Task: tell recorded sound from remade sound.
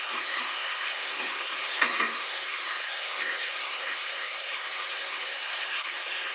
remade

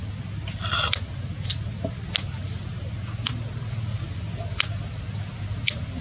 recorded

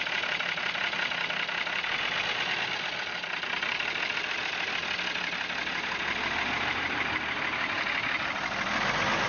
recorded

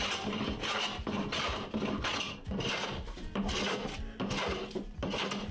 recorded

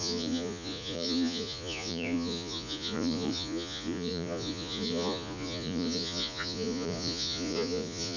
remade